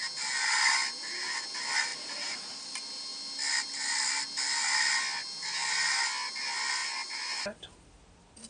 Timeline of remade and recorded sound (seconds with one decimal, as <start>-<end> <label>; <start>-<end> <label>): 0.0-1.9 recorded; 1.9-2.7 remade; 2.7-6.8 recorded; 6.8-7.4 remade; 7.4-8.5 recorded